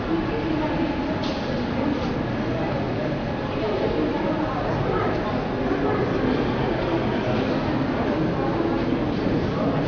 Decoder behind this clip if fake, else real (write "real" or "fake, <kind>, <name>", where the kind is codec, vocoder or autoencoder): real